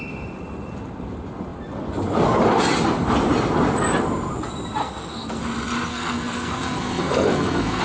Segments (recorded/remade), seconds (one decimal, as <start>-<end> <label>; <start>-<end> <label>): 0.0-4.8 recorded; 4.8-5.4 remade; 5.4-5.9 recorded; 5.9-7.8 remade